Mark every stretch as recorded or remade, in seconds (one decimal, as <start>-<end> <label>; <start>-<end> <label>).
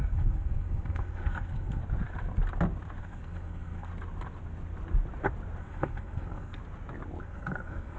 0.0-1.8 remade; 1.8-3.0 recorded; 3.0-3.9 remade; 3.9-5.6 recorded; 5.6-6.6 remade; 6.6-7.2 recorded; 7.2-8.0 remade